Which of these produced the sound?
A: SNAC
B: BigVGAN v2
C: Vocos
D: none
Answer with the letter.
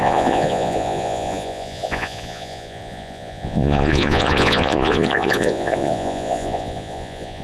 C